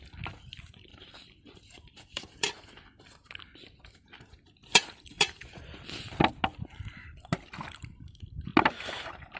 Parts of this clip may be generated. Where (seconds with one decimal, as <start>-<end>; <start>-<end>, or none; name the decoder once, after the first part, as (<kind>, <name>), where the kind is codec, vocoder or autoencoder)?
0.9-2.5 (vocoder, BigVGAN v2); 4.7-6.2